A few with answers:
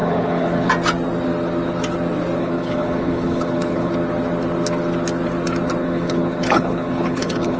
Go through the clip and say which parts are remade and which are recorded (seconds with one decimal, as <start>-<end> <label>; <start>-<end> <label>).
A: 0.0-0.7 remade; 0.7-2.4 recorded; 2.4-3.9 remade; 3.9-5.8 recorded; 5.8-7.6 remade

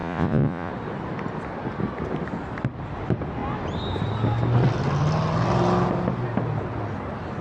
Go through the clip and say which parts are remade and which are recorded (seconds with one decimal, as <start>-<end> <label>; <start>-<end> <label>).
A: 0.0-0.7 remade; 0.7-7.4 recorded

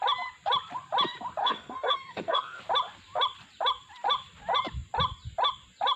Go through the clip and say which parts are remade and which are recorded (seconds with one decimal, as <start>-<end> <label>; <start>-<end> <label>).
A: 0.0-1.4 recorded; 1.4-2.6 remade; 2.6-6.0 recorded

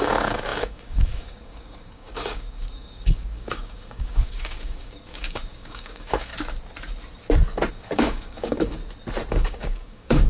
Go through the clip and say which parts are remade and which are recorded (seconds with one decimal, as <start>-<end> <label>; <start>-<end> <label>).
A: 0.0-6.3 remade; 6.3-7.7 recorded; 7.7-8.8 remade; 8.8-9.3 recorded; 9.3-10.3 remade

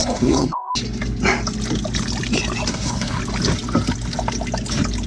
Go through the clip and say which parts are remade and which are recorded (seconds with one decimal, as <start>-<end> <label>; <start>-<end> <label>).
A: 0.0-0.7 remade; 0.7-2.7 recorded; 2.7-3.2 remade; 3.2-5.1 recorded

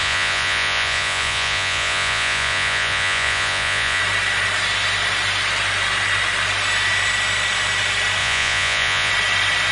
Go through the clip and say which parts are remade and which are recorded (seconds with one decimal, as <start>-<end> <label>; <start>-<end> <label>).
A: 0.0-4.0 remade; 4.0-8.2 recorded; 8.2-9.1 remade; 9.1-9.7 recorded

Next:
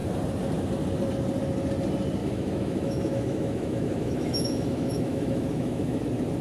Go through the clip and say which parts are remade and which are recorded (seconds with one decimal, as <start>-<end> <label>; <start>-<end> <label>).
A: 0.0-2.2 recorded; 2.2-6.0 remade; 6.0-6.4 recorded